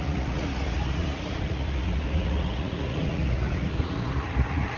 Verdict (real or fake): fake